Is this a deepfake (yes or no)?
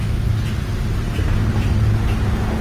no